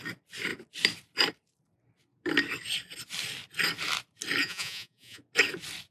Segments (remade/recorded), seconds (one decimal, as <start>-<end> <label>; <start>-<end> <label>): 0.0-4.4 recorded; 4.4-5.2 remade; 5.2-5.9 recorded